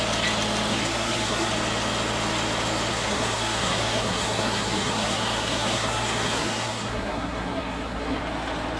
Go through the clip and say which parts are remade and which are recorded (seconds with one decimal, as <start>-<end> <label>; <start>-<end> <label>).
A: 0.0-0.7 recorded; 0.7-1.5 remade; 1.5-2.9 recorded; 2.9-8.2 remade; 8.2-8.8 recorded